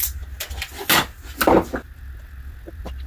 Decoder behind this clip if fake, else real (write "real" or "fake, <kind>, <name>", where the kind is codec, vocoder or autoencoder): real